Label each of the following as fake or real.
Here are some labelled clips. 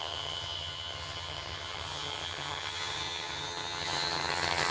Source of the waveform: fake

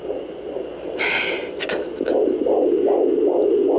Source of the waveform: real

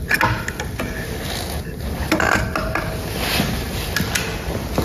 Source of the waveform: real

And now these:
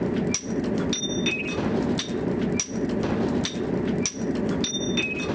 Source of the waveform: real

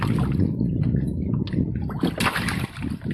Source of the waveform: real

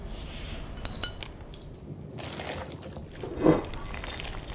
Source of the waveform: real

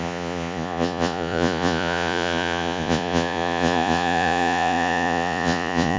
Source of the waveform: fake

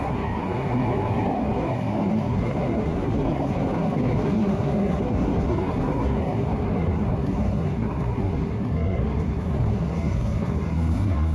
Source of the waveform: fake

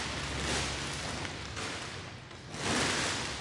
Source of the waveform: real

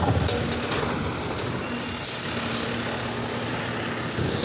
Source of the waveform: real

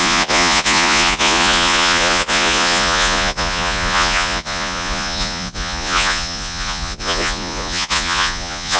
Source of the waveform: fake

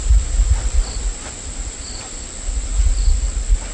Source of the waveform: real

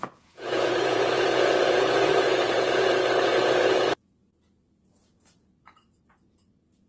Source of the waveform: fake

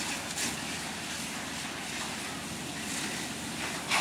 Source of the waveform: real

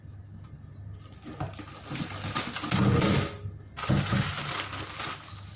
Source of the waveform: real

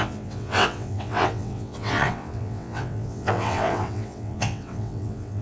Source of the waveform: fake